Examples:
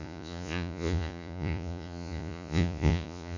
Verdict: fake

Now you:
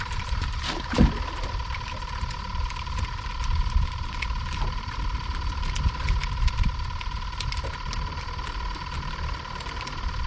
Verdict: real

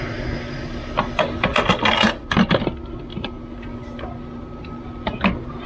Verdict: real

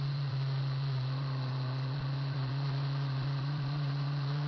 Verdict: fake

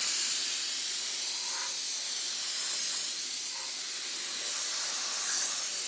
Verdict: real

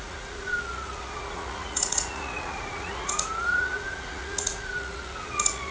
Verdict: fake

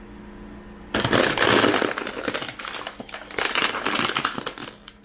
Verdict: real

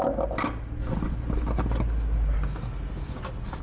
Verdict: real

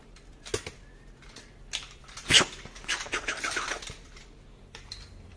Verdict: real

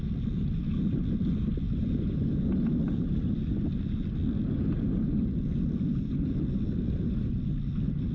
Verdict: real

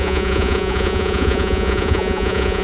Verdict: fake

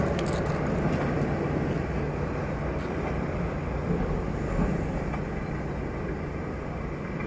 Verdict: real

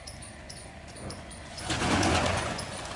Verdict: fake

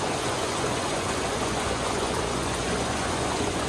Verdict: fake